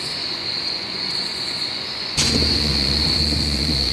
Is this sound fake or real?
fake